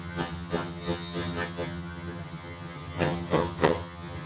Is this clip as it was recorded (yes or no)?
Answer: no